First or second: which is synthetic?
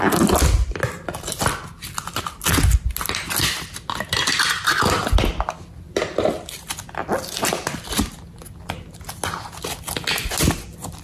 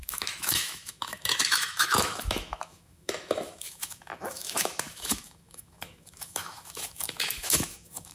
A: second